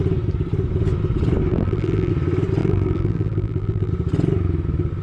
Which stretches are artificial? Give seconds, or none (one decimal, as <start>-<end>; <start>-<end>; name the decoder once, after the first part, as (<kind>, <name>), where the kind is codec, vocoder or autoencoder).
1.5-2.1 (vocoder, BigVGAN v2); 2.6-3.9